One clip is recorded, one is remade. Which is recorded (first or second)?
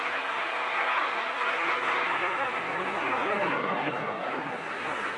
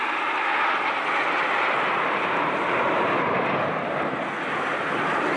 second